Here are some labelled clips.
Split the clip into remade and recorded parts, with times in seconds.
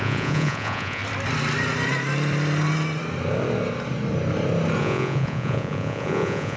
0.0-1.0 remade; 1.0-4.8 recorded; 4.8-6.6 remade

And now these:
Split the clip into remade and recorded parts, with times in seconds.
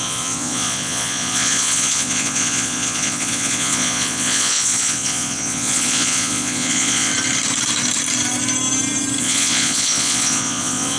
0.0-7.1 remade; 7.1-9.2 recorded; 9.2-11.0 remade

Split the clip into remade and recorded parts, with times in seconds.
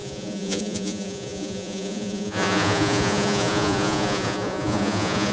0.0-5.3 remade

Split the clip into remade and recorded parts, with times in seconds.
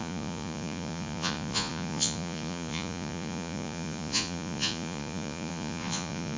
0.0-6.4 remade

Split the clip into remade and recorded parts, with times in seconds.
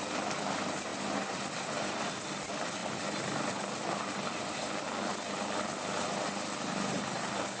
0.0-7.6 recorded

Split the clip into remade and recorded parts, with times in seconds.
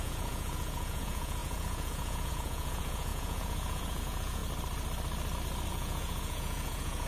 0.0-4.4 remade; 4.4-5.7 recorded; 5.7-7.1 remade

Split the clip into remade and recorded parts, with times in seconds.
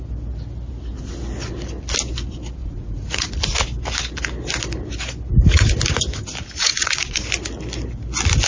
0.0-2.6 recorded; 2.6-3.3 remade; 3.3-6.6 recorded; 6.6-7.2 remade; 7.2-8.5 recorded